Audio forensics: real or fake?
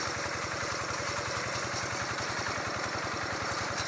real